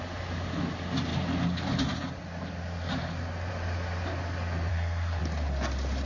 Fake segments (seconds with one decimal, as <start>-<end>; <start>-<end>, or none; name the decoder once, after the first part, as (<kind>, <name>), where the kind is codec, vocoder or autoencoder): 4.7-5.2 (codec, SNAC)